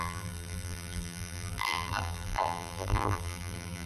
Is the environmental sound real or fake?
fake